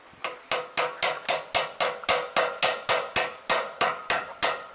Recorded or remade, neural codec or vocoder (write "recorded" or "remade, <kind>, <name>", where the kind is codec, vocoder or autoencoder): recorded